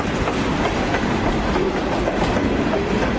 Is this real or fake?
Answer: real